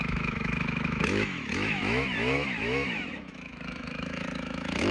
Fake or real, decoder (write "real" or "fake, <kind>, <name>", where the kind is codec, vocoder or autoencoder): fake, autoencoder, DAC-VAE